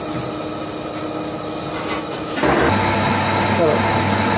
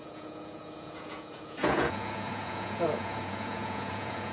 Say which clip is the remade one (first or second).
second